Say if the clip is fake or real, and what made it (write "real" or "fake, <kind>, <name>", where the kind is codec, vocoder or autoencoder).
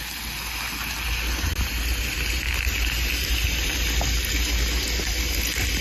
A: real